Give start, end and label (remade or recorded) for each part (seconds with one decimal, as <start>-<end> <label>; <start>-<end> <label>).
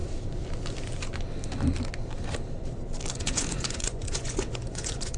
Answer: 0.0-3.1 recorded; 3.1-5.2 remade